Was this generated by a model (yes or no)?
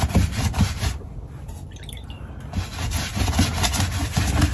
no